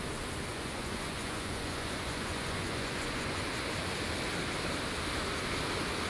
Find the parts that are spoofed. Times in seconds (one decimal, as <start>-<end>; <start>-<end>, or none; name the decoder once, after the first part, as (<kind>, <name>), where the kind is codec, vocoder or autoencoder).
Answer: 0.5-3.4 (vocoder, Vocos)